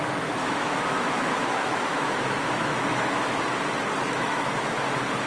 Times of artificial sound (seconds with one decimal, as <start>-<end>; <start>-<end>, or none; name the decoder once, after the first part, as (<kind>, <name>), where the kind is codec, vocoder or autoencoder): 0.4-3.4 (autoencoder, DAC-VAE); 4.0-4.6